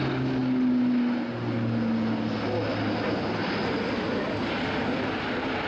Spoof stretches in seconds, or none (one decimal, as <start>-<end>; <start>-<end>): none